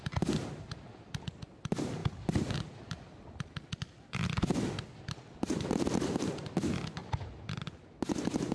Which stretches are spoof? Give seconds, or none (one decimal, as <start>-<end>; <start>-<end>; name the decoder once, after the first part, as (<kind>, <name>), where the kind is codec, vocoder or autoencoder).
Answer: none